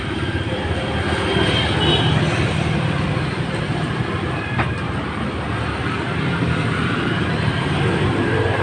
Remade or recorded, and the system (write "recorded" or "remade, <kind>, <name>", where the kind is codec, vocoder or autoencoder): remade, vocoder, BigVGAN v2